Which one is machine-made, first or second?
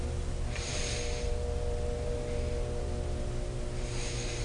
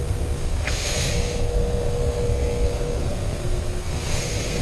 second